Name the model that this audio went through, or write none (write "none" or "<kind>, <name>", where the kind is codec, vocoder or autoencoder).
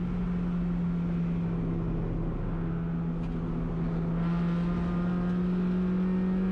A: none